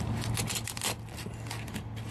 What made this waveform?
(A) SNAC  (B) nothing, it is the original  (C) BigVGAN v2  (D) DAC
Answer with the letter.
B